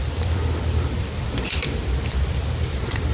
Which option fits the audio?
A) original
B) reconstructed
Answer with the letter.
B